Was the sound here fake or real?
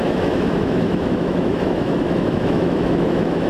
fake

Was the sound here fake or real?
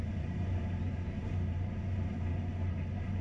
fake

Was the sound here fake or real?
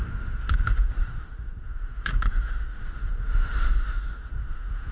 fake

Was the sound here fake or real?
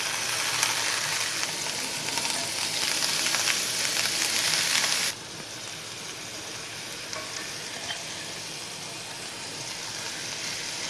real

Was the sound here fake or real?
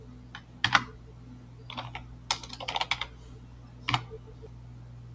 real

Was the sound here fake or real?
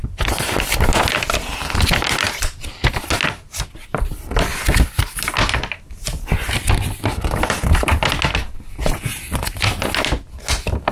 real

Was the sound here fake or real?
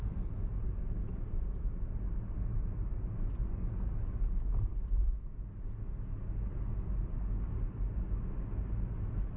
real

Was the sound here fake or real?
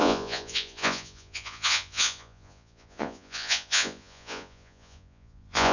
fake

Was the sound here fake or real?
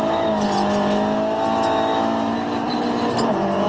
real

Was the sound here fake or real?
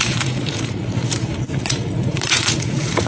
fake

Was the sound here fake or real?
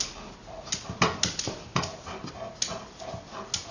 real